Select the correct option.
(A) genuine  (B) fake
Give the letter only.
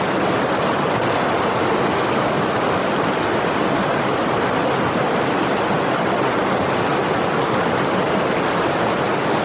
A